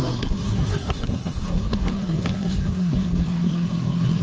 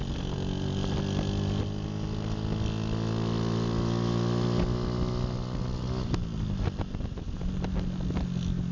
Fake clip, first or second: first